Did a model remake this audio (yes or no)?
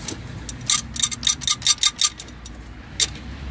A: no